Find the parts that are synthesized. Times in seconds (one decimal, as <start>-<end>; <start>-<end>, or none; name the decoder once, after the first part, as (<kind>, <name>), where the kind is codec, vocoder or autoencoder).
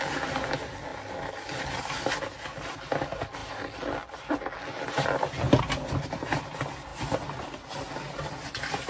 none